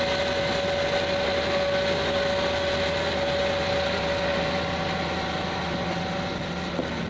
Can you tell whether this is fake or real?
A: real